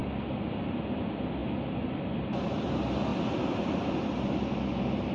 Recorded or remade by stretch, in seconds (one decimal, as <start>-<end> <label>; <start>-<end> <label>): 0.0-5.1 recorded